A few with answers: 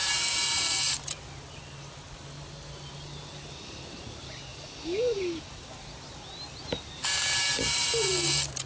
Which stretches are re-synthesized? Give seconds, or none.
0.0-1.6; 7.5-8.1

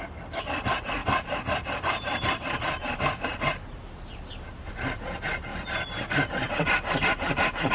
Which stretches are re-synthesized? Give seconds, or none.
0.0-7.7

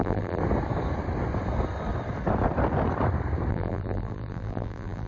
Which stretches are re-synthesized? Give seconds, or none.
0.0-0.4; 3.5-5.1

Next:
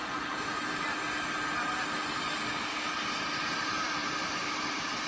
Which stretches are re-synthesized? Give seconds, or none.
3.1-5.1

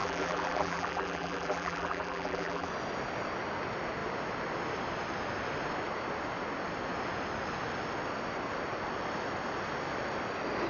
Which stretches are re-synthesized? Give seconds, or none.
0.0-2.7

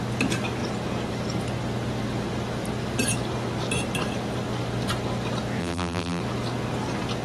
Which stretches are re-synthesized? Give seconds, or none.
5.6-6.2

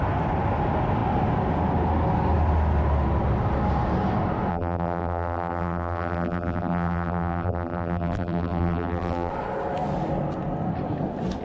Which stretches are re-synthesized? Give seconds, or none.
4.5-9.3